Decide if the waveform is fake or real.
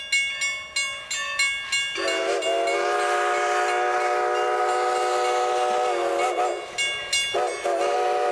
real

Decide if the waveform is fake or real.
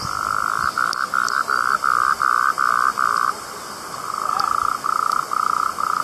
real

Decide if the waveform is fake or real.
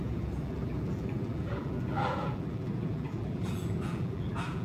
fake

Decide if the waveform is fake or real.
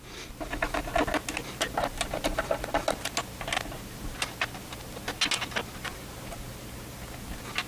real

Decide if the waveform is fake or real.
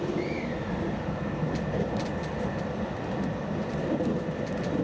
real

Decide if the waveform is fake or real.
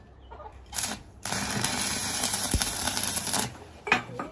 fake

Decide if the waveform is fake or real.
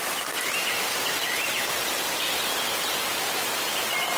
real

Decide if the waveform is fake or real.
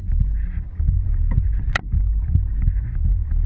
real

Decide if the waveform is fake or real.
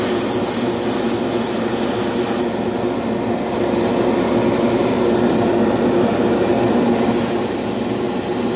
real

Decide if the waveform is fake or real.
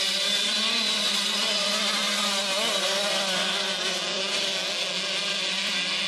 real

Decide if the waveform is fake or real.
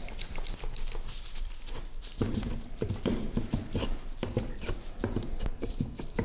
fake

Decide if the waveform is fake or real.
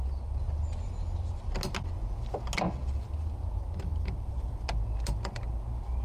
real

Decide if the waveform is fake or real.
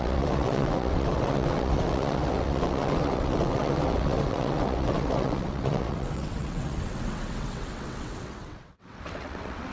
fake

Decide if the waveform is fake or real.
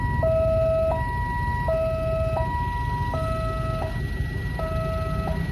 real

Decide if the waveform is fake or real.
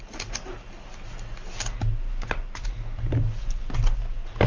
real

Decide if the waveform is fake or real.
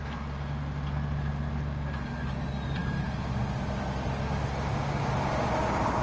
real